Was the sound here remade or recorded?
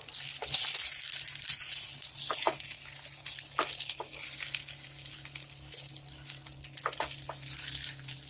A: recorded